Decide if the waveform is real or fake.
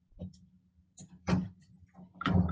fake